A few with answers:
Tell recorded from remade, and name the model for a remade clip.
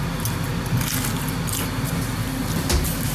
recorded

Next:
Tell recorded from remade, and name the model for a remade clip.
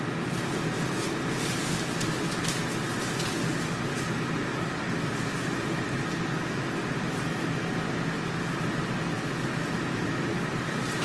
recorded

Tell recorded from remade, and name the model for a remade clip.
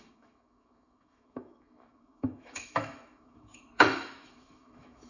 remade, autoencoder, DAC-VAE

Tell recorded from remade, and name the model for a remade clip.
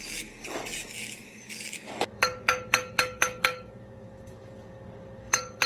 remade, codec, DAC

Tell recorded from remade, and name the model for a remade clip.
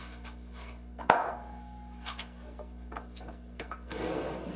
remade, codec, SNAC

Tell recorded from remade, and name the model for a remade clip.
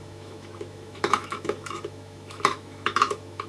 remade, autoencoder, DAC-VAE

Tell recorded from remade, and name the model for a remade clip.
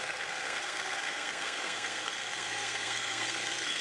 remade, codec, SNAC